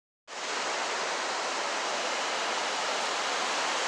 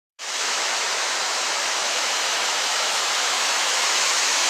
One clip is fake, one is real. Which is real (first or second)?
first